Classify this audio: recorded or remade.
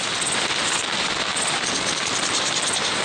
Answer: recorded